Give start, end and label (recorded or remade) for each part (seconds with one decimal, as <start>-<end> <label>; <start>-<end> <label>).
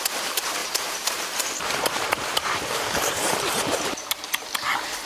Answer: 0.0-0.6 recorded; 0.6-3.7 remade; 3.7-5.1 recorded